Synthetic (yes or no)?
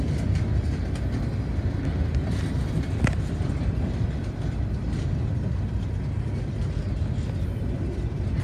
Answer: no